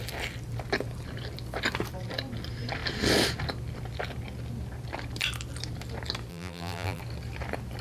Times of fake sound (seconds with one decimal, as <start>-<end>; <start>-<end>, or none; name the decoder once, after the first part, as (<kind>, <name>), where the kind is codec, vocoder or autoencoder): 6.3-7.0 (vocoder, BigVGAN v2)